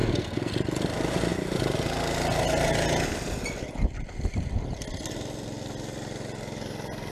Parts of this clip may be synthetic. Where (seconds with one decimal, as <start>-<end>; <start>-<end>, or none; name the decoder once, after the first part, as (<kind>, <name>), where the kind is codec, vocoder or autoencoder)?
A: 0.0-0.5 (codec, SNAC)

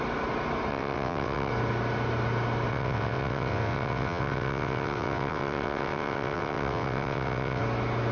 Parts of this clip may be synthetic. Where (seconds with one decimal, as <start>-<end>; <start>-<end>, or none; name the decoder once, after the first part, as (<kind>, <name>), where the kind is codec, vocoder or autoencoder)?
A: 0.7-1.5 (vocoder, WaveNeXt); 2.7-7.6